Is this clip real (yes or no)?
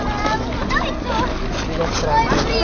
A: yes